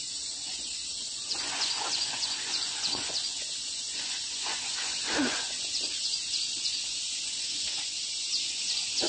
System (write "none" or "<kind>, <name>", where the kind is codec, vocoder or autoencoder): vocoder, Vocos